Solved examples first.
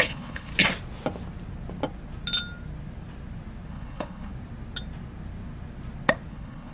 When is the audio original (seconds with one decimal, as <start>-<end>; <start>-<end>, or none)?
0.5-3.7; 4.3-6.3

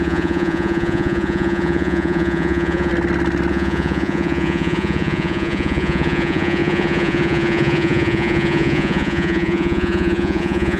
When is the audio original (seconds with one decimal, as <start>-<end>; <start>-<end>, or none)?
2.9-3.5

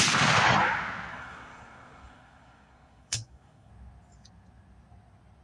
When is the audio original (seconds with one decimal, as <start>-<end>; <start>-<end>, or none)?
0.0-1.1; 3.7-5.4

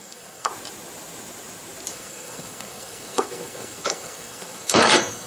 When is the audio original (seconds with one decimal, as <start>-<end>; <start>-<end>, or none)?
0.5-1.9